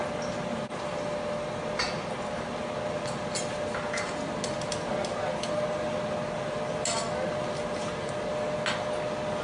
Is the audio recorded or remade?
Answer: recorded